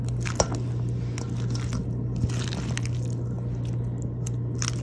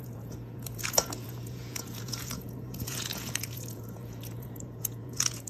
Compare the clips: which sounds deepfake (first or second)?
second